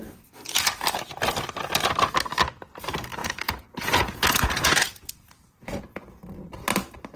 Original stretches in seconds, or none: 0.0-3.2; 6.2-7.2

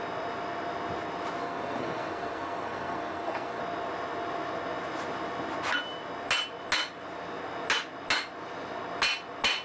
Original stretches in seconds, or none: 0.0-1.4; 3.6-9.6